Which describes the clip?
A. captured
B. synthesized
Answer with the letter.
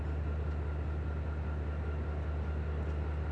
A